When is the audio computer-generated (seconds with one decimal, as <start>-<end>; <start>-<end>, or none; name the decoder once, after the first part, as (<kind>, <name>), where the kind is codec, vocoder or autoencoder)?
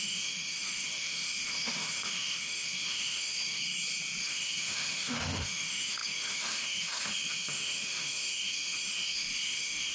0.0-3.6 (autoencoder, DAC-VAE); 4.2-9.9